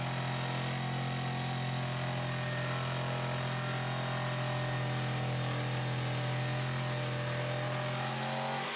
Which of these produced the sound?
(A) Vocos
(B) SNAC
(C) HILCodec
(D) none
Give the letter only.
D